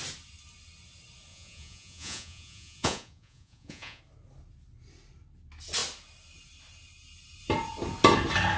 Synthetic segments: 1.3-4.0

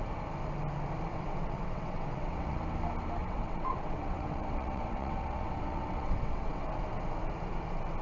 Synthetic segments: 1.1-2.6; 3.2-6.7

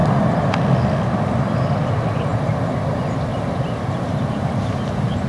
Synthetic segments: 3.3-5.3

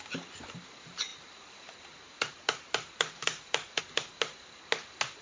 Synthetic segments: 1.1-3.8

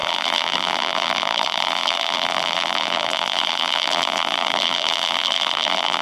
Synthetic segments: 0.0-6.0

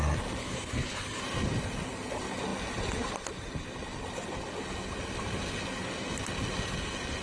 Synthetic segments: 0.4-1.2

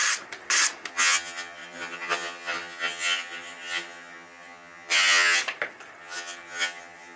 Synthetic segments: 0.9-5.4; 6.0-7.2